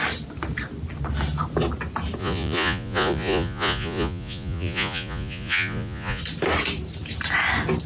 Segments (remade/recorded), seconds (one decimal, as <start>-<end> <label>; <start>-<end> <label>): 0.0-2.2 recorded; 2.2-6.2 remade; 6.2-7.9 recorded